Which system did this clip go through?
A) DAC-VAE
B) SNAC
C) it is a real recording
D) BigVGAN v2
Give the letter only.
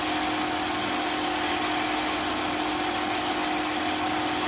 C